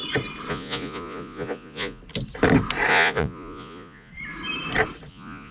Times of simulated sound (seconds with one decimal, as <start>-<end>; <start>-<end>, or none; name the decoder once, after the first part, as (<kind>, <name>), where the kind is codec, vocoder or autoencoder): 0.5-2.0 (vocoder, Vocos); 2.9-4.1; 5.1-5.5